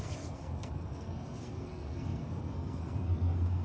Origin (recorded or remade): remade